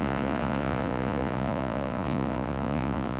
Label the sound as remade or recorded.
remade